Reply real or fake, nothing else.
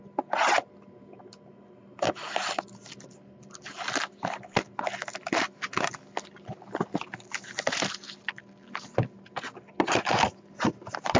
real